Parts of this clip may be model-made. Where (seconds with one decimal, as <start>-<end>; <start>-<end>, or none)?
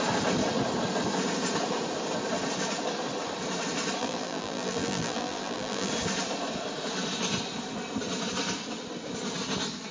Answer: 4.0-5.9